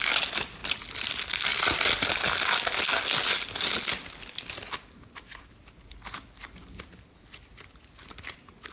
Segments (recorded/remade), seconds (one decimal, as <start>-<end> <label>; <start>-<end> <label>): 0.0-8.7 recorded